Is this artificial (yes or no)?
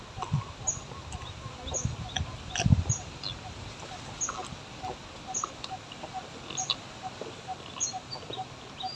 no